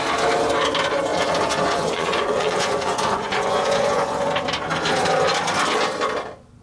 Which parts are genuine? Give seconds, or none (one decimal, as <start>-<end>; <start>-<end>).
0.0-1.1; 4.3-6.6